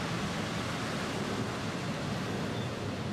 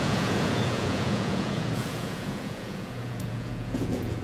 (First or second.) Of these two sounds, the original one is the first